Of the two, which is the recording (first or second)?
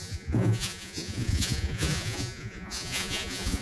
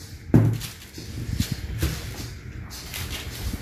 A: second